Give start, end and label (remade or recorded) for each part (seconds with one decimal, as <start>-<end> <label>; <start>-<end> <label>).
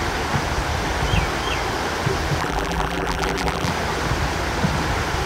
0.0-2.4 recorded; 2.4-3.7 remade; 3.7-5.3 recorded